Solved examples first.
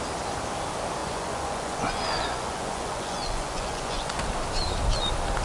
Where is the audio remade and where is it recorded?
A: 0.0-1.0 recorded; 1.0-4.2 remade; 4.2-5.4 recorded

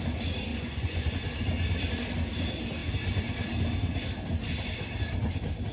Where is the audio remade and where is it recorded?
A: 0.0-0.5 recorded; 0.5-1.1 remade; 1.1-5.7 recorded

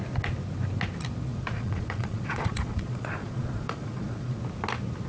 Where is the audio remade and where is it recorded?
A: 0.0-1.3 recorded; 1.3-4.4 remade; 4.4-5.1 recorded

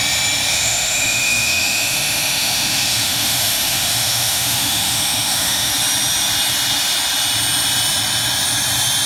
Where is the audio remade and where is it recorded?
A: 0.0-0.5 recorded; 0.5-5.7 remade; 5.7-9.1 recorded

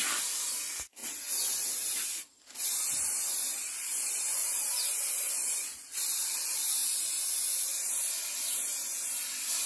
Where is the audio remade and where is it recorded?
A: 0.0-9.7 recorded

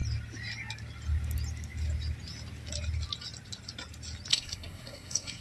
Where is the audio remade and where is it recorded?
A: 0.0-4.3 recorded; 4.3-5.4 remade